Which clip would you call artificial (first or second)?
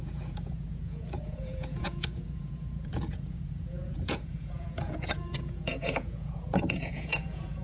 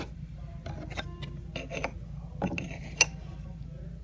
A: first